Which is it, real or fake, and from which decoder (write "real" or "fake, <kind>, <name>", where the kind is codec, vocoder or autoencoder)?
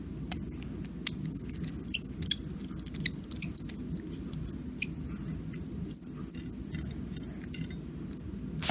real